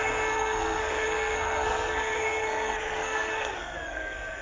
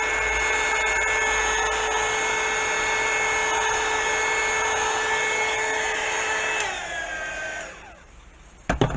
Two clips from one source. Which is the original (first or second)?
second